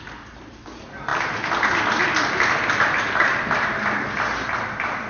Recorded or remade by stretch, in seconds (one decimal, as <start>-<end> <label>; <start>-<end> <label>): 0.0-5.1 recorded